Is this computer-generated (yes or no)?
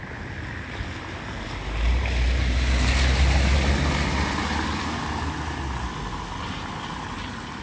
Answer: no